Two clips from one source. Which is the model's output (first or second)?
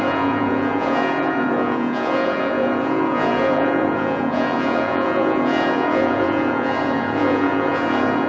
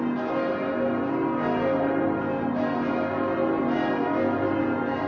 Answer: first